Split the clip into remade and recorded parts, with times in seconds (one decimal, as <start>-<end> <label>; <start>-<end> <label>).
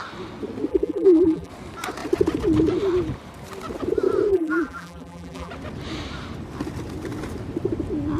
0.0-0.7 recorded; 0.7-1.5 remade; 1.5-4.3 recorded; 4.3-5.5 remade; 5.5-8.2 recorded